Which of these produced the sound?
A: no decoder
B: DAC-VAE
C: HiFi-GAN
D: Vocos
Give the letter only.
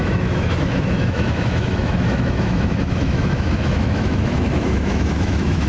B